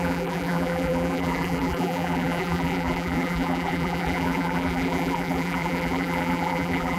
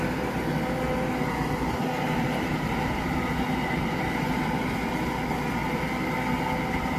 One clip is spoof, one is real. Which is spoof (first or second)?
first